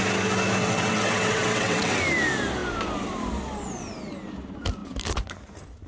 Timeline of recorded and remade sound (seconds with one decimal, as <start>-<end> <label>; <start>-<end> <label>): 0.0-0.6 recorded; 0.6-2.0 remade; 2.0-5.9 recorded